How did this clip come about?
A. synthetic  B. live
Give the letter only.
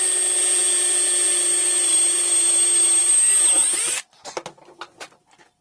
B